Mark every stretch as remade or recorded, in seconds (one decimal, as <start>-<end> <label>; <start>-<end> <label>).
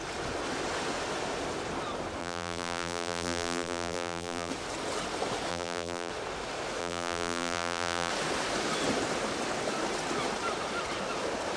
0.0-2.2 recorded; 2.2-4.5 remade; 4.5-5.5 recorded; 5.5-6.1 remade; 6.1-6.8 recorded; 6.8-8.1 remade; 8.1-11.6 recorded